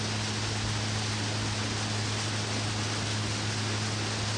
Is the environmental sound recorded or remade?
recorded